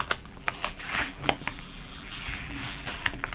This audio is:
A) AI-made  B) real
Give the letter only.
A